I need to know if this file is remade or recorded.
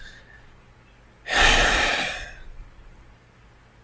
recorded